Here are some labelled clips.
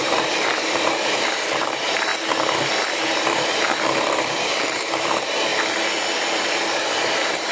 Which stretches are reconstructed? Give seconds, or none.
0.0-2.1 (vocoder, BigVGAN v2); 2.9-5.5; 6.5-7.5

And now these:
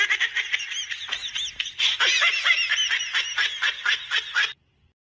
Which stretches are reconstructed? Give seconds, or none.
none

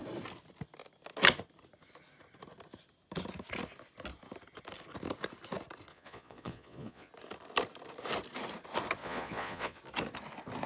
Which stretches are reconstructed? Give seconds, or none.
5.9-7.1 (vocoder, Vocos); 9.0-9.8

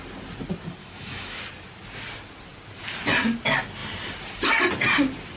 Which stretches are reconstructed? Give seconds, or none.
0.8-1.4 (autoencoder, DAC-VAE)